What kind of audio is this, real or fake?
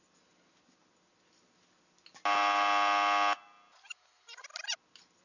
real